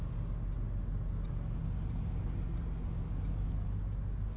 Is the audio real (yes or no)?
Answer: yes